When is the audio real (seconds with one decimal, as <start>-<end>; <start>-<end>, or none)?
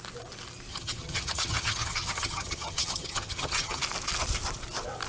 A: 0.0-0.7; 3.8-5.1